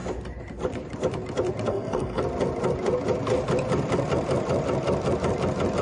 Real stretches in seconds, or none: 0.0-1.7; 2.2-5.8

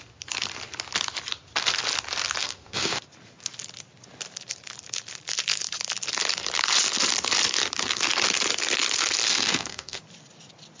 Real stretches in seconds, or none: 0.0-2.4; 3.0-9.2; 10.0-10.8